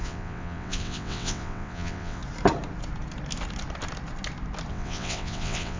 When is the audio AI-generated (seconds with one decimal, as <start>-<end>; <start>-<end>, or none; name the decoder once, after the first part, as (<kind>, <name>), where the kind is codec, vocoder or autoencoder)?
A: 0.0-2.2 (vocoder, WaveNeXt); 4.7-5.8

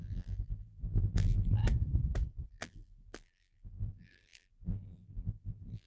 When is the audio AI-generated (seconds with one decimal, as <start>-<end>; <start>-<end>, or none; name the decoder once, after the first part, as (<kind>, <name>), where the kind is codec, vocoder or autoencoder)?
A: 0.0-1.6 (vocoder, BigVGAN v2); 2.5-5.9